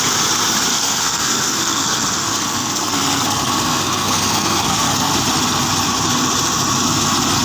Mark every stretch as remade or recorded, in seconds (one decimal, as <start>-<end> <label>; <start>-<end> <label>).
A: 0.0-0.7 recorded; 0.7-5.1 remade; 5.1-7.4 recorded